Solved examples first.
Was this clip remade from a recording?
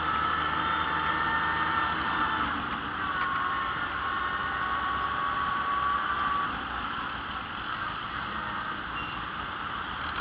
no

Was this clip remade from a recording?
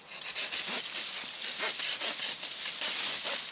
no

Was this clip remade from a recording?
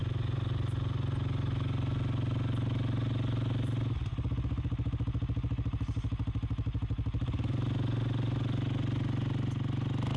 no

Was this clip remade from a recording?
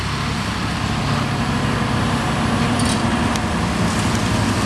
yes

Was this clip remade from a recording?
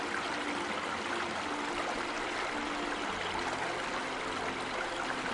no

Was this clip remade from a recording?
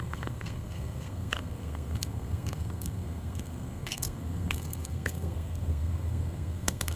yes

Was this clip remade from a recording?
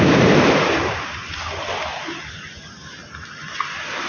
no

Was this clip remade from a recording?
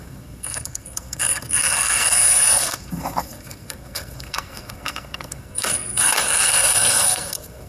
yes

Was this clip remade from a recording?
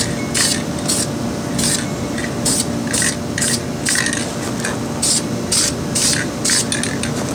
no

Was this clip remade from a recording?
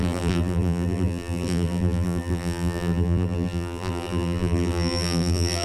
yes